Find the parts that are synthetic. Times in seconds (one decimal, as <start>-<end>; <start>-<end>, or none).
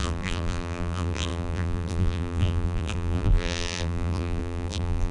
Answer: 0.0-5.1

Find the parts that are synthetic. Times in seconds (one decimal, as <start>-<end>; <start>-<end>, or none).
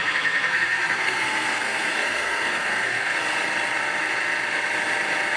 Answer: 0.0-3.2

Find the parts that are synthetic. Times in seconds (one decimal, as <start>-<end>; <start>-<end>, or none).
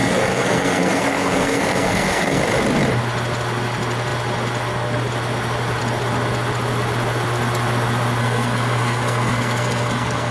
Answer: 0.0-2.4; 8.2-10.3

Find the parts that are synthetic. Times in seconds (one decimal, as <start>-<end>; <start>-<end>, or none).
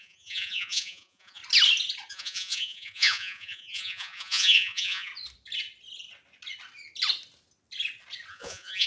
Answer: 0.0-1.4; 2.1-5.1; 8.3-8.9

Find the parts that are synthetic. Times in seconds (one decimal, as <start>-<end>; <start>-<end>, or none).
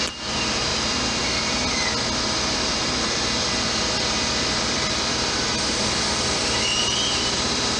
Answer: 0.0-0.7; 4.5-7.8